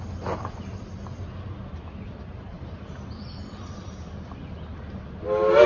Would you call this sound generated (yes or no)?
no